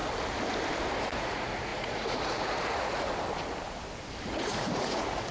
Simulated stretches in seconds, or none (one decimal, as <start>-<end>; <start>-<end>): 1.0-3.1; 4.3-5.3